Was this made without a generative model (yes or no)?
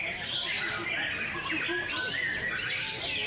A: yes